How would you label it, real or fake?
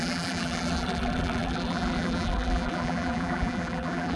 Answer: fake